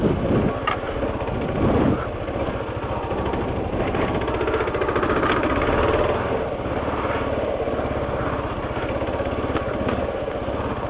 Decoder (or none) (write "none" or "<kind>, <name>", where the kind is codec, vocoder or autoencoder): none